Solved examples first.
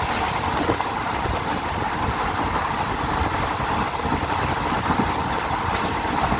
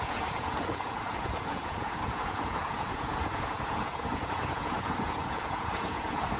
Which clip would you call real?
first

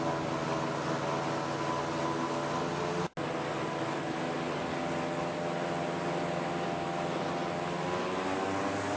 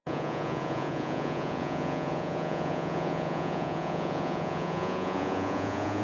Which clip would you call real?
first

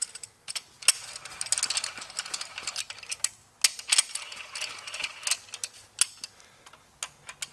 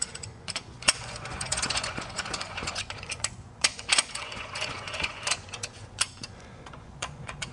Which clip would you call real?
first